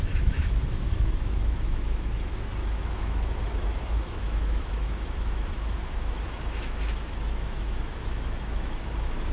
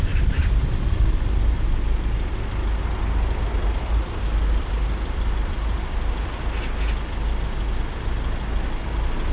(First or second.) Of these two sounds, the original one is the second